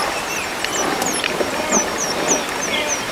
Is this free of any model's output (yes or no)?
yes